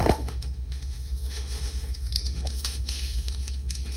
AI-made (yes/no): yes